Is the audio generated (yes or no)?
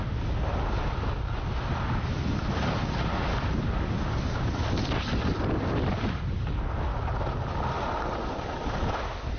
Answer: no